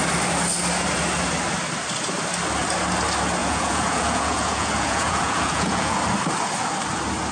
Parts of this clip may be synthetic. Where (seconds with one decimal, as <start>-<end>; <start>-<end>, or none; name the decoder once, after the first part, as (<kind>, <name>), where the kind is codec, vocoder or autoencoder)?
3.4-6.0 (vocoder, Vocos)

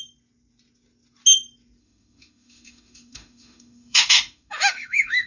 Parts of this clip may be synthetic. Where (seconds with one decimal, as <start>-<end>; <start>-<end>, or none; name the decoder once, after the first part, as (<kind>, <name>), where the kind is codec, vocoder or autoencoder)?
1.8-5.3 (autoencoder, DAC-VAE)

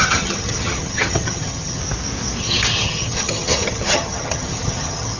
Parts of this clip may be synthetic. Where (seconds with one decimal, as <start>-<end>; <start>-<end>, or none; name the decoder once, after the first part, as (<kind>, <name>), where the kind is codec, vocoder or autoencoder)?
0.0-1.8 (vocoder, HiFi-GAN); 2.4-5.2

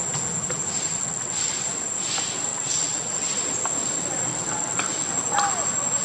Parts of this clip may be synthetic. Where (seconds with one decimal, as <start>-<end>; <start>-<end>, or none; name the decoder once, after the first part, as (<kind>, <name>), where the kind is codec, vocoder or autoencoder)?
0.9-1.5 (vocoder, WaveNeXt); 2.5-3.3; 4.3-4.8

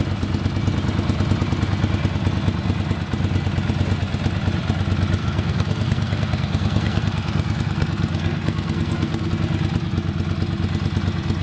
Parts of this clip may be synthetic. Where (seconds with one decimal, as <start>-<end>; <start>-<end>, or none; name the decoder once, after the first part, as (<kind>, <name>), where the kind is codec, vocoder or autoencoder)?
5.2-9.3 (codec, SNAC)

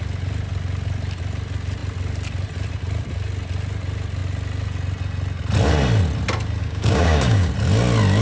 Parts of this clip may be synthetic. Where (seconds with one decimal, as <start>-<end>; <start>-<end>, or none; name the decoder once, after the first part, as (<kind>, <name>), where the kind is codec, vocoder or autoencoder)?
6.6-7.5 (codec, DAC)

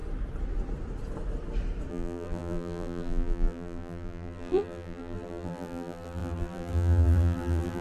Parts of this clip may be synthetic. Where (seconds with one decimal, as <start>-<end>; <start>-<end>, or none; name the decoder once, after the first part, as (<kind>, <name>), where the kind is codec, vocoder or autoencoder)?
1.9-7.8 (vocoder, BigVGAN v2)

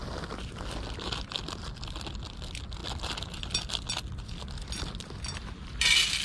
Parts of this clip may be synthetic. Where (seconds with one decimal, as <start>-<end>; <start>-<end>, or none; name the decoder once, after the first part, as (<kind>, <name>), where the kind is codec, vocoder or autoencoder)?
none